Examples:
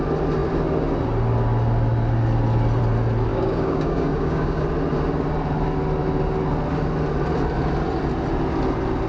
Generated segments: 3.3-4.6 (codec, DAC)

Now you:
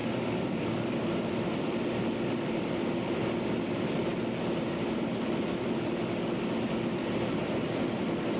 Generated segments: 0.0-1.1 (codec, DAC)